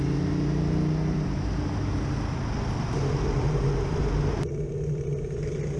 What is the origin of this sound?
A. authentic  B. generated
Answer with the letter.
A